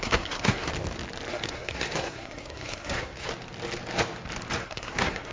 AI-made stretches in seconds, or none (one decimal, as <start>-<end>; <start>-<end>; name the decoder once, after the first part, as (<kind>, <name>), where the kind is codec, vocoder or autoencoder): 0.0-0.7 (codec, SNAC); 1.3-3.3; 4.6-5.3